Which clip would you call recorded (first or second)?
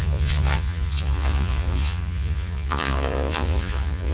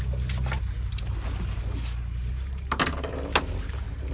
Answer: second